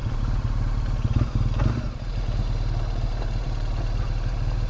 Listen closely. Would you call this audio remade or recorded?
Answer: remade